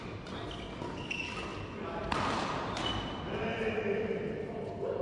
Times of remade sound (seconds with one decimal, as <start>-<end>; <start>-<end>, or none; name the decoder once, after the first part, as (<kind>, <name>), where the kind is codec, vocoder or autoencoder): 1.5-4.3 (vocoder, BigVGAN v2)